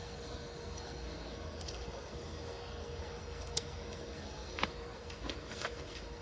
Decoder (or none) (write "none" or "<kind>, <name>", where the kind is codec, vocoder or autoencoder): codec, SNAC